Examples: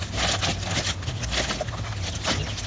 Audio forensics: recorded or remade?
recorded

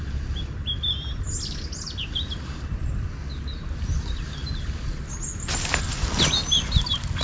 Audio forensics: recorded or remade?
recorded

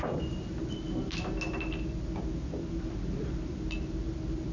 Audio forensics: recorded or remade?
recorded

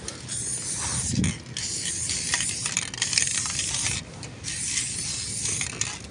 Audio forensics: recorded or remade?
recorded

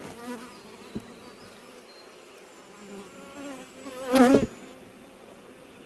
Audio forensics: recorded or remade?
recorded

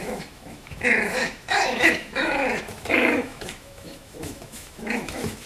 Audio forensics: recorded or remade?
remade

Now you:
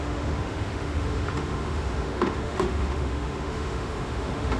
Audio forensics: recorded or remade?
remade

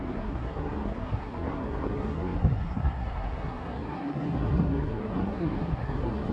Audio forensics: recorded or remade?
remade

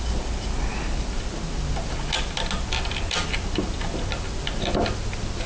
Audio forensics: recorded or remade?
recorded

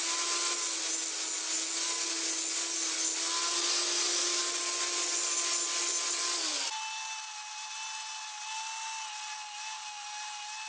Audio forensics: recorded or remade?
recorded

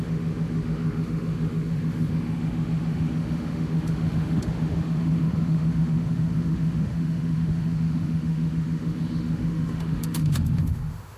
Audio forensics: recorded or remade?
remade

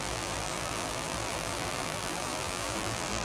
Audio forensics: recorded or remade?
remade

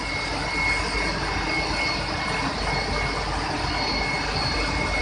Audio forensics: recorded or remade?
recorded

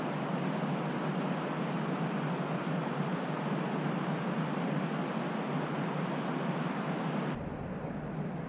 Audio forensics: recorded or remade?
recorded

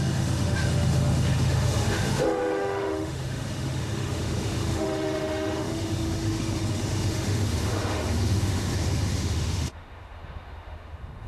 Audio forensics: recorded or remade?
remade